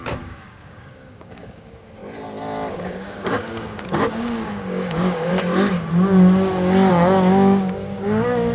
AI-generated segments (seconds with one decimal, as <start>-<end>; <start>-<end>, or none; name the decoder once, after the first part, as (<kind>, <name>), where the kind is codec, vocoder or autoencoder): 0.0-2.0 (codec, DAC); 2.7-5.3; 6.9-8.5